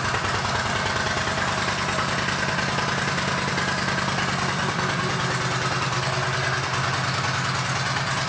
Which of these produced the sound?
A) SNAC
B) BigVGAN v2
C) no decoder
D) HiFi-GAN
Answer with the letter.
C